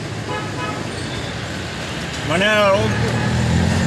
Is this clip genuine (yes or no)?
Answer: yes